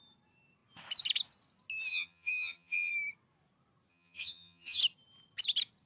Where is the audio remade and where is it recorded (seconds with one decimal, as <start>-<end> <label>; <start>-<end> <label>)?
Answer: 0.0-1.9 recorded; 1.9-2.9 remade; 2.9-3.9 recorded; 3.9-4.8 remade; 4.8-5.9 recorded